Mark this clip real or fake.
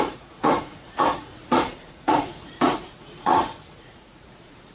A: fake